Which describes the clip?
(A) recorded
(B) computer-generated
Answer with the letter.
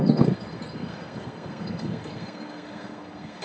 B